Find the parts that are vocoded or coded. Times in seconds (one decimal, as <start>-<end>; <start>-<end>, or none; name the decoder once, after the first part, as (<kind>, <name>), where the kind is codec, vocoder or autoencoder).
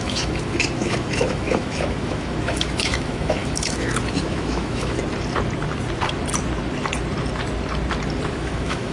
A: 0.0-5.0 (autoencoder, DAC-VAE); 8.3-8.9